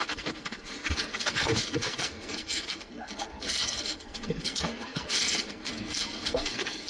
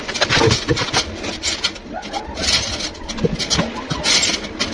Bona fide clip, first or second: second